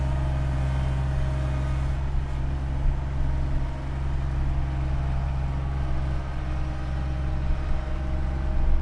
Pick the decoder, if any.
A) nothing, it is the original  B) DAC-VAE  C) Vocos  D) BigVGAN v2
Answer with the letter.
A